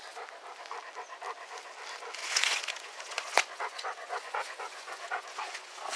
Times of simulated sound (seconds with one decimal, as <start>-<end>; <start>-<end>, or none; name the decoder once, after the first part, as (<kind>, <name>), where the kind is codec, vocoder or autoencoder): 2.2-6.0 (vocoder, Vocos)